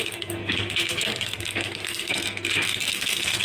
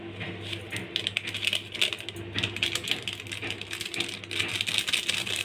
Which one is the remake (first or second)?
first